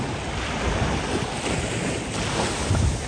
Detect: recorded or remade recorded